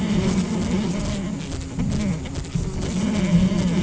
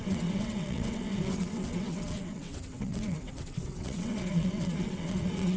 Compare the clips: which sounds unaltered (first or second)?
first